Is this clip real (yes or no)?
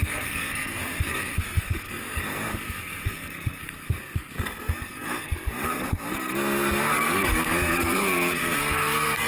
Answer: no